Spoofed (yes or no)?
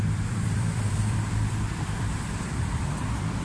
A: yes